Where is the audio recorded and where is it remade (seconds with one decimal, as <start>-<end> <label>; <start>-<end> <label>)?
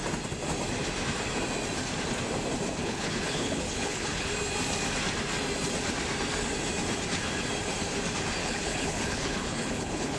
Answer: 0.0-2.8 recorded; 2.8-4.3 remade; 4.3-8.4 recorded; 8.4-10.2 remade